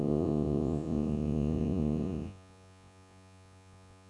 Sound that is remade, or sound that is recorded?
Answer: remade